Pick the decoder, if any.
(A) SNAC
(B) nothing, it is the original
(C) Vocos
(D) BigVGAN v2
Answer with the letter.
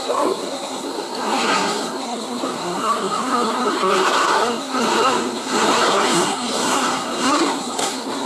A